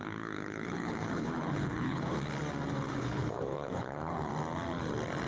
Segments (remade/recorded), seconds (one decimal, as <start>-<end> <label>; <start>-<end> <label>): 0.0-2.1 remade; 2.1-2.8 recorded; 2.8-4.3 remade; 4.3-5.3 recorded